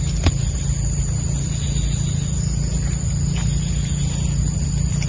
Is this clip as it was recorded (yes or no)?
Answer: yes